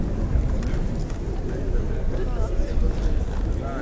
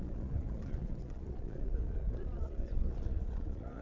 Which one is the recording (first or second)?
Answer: first